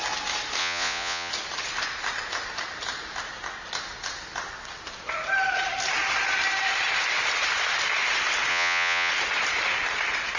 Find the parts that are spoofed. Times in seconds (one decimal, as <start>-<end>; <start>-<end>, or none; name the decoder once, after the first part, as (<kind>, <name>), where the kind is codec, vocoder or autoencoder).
0.6-1.3 (vocoder, Vocos); 8.5-9.1